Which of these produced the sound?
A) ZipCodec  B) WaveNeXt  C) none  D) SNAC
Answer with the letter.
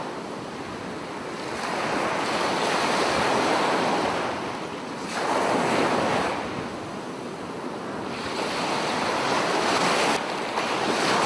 C